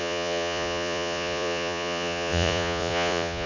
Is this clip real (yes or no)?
no